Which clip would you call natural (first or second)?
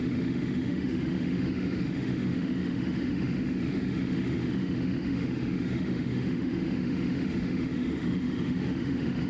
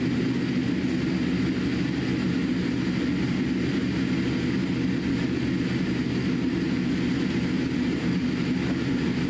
second